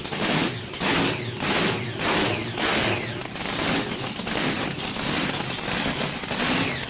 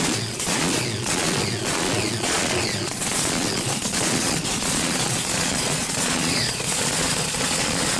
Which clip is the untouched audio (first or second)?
first